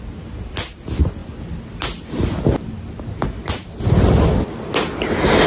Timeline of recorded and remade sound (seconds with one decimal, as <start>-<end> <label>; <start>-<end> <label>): 0.0-5.5 recorded